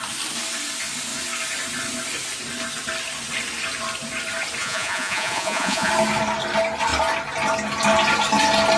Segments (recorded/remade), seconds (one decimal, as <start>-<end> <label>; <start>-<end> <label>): 0.0-4.6 recorded; 4.6-5.9 remade; 5.9-8.8 recorded